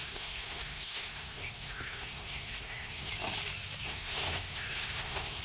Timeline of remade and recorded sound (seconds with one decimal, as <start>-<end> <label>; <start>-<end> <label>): 0.0-3.1 remade; 3.1-3.8 recorded; 3.8-5.4 remade